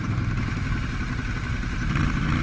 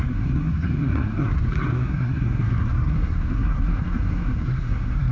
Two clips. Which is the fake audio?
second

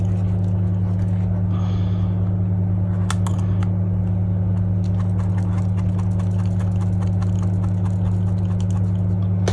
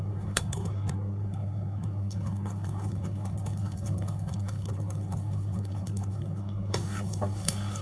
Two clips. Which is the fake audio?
second